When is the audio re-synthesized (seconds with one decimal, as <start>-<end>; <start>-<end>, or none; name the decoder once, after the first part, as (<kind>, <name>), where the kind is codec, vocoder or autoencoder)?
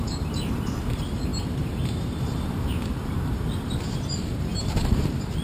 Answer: 0.0-5.4 (vocoder, BigVGAN v2)